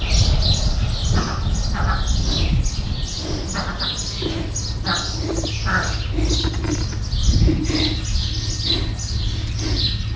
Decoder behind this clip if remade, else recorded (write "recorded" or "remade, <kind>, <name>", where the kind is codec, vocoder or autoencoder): recorded